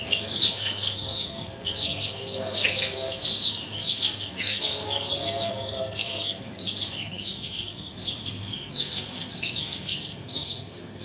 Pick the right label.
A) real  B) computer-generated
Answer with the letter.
B